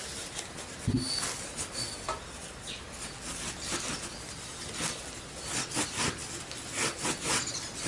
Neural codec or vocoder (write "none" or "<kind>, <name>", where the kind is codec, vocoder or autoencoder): none